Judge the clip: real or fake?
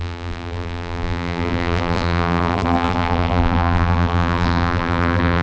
fake